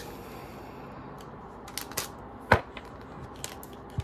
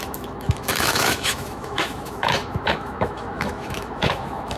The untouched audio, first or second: first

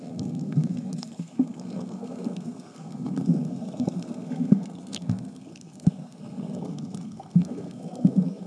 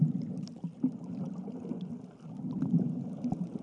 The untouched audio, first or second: second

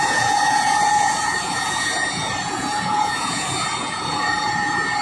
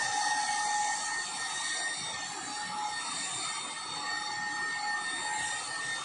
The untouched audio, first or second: second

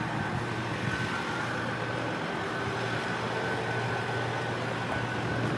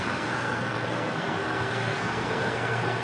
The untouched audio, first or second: first